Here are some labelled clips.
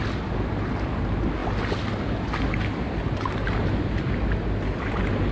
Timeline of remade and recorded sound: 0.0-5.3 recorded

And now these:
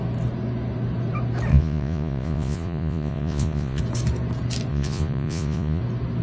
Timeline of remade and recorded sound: 0.0-1.5 recorded; 1.5-3.8 remade; 3.8-4.7 recorded; 4.7-5.8 remade; 5.8-6.2 recorded